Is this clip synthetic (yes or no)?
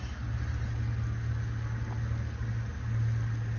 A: no